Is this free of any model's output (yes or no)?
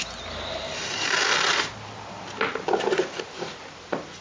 no